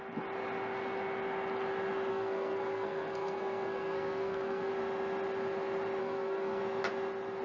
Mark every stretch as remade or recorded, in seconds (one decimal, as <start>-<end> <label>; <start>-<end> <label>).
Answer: 0.0-2.1 recorded; 2.1-4.7 remade; 4.7-6.0 recorded; 6.0-6.6 remade; 6.6-7.4 recorded